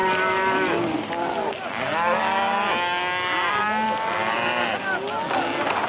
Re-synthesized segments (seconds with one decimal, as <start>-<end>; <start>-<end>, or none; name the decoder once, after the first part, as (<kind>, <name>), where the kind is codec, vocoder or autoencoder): none